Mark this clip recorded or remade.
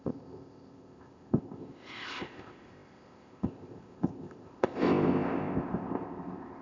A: remade